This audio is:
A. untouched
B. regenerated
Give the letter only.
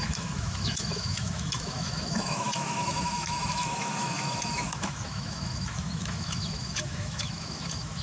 B